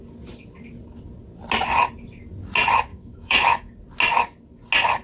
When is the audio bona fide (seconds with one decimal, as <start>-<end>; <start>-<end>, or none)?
0.0-2.9; 3.7-5.0